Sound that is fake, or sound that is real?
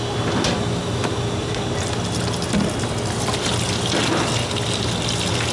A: real